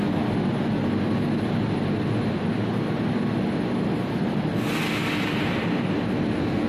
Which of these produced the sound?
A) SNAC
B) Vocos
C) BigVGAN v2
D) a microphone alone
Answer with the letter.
D